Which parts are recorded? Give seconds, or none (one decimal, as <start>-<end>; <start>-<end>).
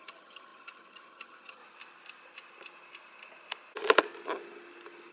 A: 1.6-5.1